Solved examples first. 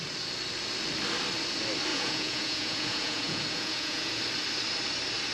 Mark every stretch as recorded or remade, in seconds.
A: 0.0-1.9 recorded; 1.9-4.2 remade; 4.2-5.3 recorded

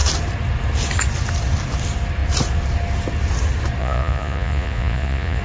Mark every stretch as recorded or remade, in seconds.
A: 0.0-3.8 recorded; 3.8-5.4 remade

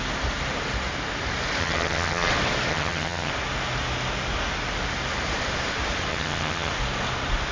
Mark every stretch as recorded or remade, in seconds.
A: 0.0-1.6 recorded; 1.6-2.3 remade; 2.3-2.7 recorded; 2.7-3.3 remade; 3.3-6.1 recorded; 6.1-6.7 remade; 6.7-7.5 recorded